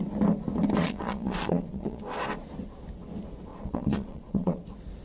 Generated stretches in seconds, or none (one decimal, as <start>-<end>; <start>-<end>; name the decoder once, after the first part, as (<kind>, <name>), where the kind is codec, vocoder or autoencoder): 0.8-2.0 (vocoder, Vocos); 3.5-4.6